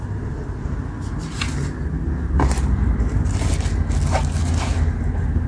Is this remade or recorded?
recorded